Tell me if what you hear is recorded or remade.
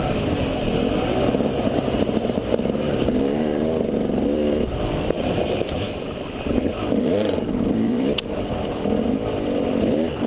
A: remade